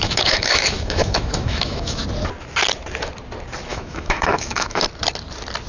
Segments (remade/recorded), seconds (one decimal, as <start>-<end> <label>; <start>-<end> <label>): 0.0-2.0 remade; 2.0-3.7 recorded; 3.7-4.8 remade; 4.8-5.7 recorded